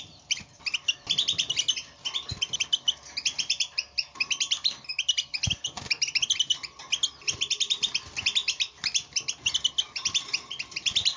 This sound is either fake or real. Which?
real